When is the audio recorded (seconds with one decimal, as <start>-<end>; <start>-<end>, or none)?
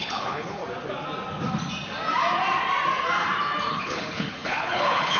0.6-3.7